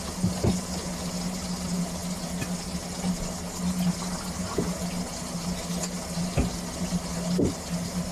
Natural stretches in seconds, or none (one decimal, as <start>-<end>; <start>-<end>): 0.0-8.1